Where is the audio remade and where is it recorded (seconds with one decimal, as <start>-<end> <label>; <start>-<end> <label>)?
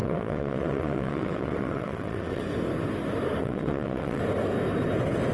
0.0-2.4 remade; 2.4-3.4 recorded; 3.4-4.2 remade; 4.2-5.3 recorded